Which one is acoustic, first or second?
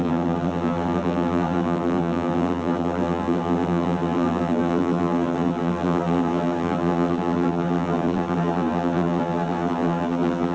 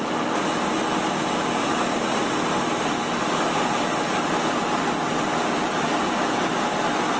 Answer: second